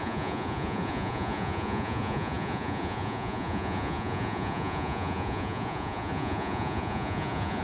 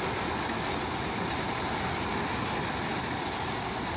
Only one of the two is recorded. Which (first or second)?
second